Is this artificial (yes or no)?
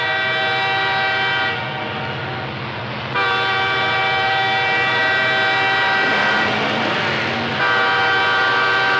no